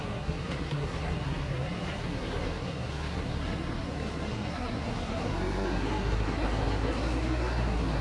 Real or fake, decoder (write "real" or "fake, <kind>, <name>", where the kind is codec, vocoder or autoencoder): fake, codec, SNAC